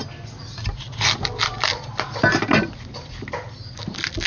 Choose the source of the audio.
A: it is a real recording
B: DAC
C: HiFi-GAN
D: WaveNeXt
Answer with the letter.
A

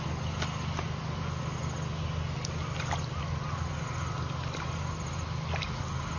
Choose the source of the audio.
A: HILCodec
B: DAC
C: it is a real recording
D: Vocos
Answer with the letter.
C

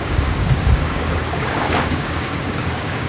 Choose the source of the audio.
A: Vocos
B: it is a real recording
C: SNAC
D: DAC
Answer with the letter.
D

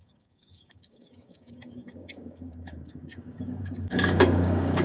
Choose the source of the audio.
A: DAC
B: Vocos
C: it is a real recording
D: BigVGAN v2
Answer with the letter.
A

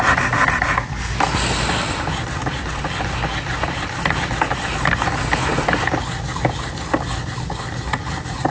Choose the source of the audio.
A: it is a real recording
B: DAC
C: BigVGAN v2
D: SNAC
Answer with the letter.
A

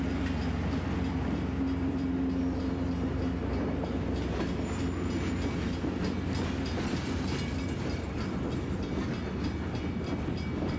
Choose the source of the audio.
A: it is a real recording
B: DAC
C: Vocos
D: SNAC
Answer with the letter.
A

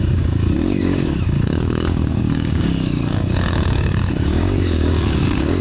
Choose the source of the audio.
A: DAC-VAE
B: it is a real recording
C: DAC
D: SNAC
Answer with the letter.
C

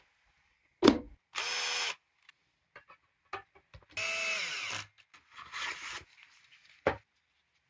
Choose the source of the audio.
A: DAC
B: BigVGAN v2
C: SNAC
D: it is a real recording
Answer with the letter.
D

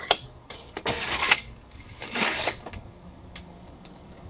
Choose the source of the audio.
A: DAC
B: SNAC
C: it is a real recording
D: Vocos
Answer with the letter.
A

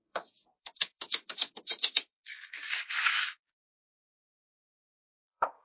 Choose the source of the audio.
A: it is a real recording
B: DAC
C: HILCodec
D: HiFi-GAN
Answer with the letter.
B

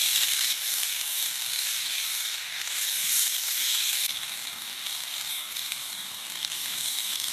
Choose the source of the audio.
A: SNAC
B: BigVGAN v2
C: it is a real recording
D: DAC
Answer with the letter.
D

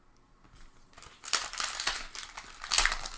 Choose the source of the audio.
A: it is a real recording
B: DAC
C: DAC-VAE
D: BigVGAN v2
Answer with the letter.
A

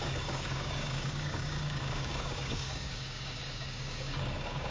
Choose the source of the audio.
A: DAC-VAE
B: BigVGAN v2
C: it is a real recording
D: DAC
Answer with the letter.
D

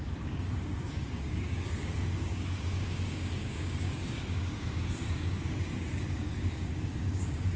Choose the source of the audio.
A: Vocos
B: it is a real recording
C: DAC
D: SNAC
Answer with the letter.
C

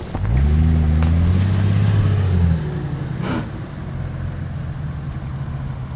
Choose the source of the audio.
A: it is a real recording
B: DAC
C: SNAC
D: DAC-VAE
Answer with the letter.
A